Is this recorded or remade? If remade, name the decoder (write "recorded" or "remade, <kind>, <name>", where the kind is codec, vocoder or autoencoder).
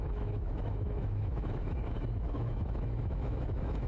remade, autoencoder, DAC-VAE